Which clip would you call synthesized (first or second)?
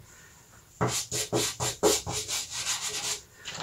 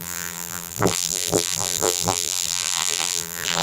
second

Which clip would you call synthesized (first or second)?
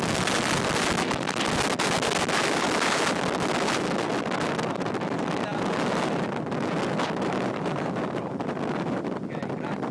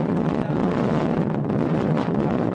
second